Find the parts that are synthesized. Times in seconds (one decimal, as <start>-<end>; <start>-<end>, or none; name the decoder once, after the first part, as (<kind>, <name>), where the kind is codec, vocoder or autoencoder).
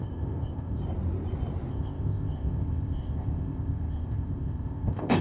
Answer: 0.0-0.8 (codec, ZipCodec); 1.7-5.2